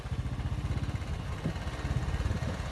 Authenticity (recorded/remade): recorded